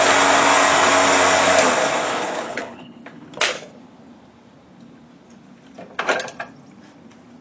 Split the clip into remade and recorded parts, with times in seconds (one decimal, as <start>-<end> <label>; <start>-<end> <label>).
0.0-2.1 recorded; 2.1-3.4 remade; 3.4-7.4 recorded